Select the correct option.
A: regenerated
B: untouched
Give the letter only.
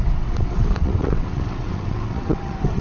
A